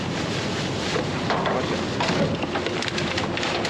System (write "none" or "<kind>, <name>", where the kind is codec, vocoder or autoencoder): none